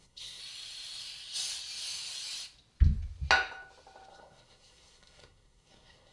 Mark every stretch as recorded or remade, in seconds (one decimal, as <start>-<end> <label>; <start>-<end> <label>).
0.0-0.4 remade; 0.4-4.1 recorded; 4.1-6.1 remade